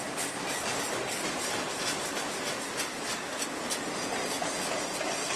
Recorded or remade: recorded